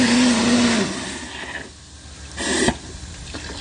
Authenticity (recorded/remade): recorded